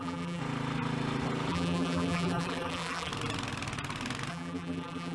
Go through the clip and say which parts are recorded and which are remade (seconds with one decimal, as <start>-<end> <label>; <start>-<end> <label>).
0.0-0.4 remade; 0.4-1.5 recorded; 1.5-3.1 remade; 3.1-4.3 recorded; 4.3-5.1 remade